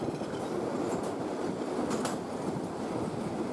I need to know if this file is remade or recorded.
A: recorded